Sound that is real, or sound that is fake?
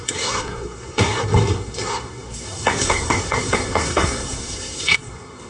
fake